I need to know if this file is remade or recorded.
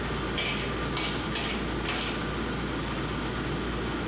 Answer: recorded